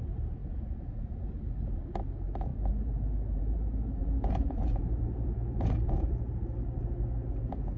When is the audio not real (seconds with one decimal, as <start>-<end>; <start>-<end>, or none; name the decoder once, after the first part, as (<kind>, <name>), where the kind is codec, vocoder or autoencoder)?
0.4-1.2 (vocoder, Vocos); 4.0-6.1

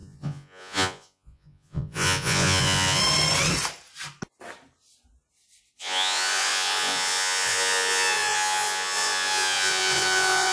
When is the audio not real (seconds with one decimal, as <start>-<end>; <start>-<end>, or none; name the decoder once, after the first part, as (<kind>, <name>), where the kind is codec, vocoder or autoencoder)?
0.0-3.0 (vocoder, Vocos); 5.8-10.5

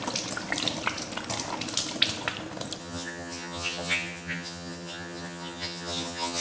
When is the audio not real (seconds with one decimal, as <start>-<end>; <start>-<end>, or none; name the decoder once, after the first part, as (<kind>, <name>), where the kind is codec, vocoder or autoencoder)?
2.8-6.4 (vocoder, HiFi-GAN)

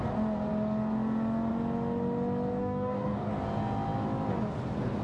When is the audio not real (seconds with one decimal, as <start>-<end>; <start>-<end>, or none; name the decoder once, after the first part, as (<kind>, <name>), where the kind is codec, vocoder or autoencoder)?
2.6-3.3 (codec, DAC)

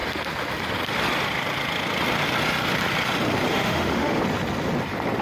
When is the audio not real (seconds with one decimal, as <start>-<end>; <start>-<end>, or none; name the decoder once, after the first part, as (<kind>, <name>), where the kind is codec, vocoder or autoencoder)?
3.5-4.2 (autoencoder, DAC-VAE)

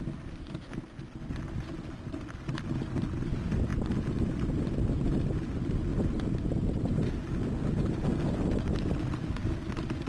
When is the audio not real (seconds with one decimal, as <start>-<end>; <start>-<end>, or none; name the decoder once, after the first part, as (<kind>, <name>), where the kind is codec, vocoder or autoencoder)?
none

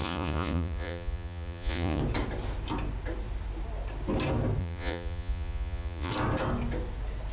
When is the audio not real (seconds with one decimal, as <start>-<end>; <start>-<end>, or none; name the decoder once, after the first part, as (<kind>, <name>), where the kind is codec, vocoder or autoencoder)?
0.0-2.0 (vocoder, Vocos); 4.6-6.1

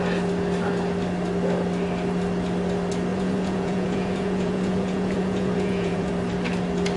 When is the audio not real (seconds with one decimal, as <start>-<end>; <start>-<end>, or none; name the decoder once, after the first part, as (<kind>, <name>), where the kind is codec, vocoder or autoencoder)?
3.1-6.1 (vocoder, Vocos)